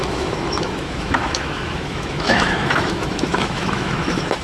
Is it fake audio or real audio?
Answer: fake